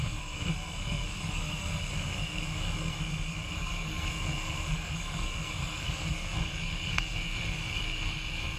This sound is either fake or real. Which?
fake